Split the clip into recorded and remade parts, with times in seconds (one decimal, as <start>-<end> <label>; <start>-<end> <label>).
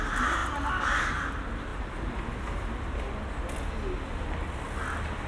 0.0-5.3 recorded